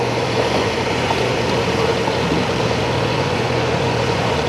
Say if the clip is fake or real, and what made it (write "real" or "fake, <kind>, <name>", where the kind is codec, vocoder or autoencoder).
fake, vocoder, Vocos